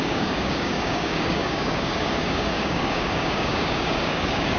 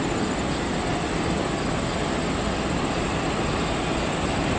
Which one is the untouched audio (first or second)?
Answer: second